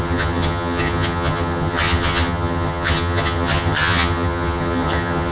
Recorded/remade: remade